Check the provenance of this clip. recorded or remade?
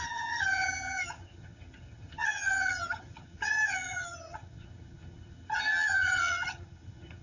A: remade